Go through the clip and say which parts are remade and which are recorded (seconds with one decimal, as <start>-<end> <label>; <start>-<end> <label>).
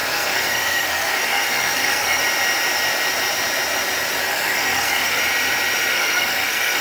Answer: 0.0-2.2 remade; 2.2-4.3 recorded; 4.3-5.2 remade; 5.2-5.9 recorded; 5.9-6.8 remade